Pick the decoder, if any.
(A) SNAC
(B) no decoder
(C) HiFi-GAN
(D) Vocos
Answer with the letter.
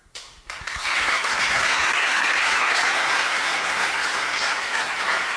A